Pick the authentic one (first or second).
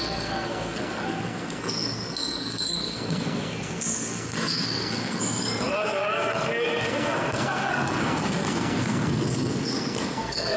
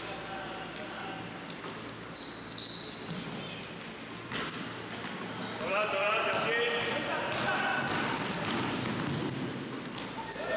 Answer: second